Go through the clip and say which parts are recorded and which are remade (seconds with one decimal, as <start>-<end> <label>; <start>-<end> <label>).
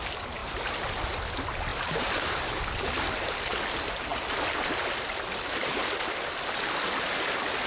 0.0-1.7 recorded; 1.7-2.6 remade; 2.6-7.7 recorded